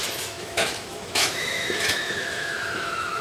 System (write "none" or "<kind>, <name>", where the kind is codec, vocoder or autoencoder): autoencoder, DAC-VAE